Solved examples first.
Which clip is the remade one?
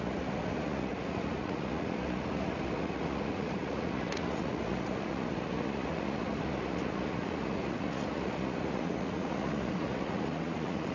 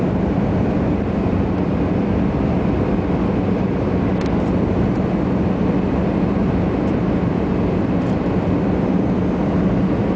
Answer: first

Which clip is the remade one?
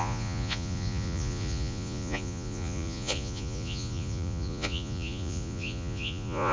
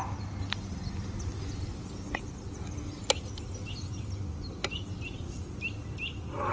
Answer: first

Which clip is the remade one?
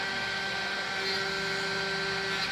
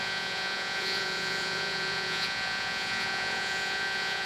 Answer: second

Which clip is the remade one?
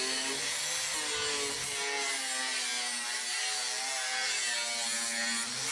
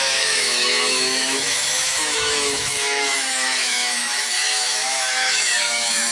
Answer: second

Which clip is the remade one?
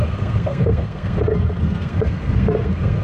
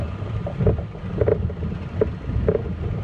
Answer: first